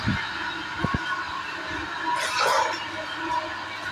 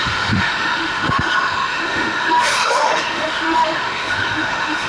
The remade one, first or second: second